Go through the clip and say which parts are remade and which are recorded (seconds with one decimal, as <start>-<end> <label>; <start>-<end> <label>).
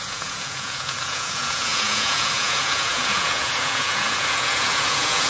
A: 0.0-5.3 remade